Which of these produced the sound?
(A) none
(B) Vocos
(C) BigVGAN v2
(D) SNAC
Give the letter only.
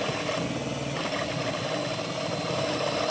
A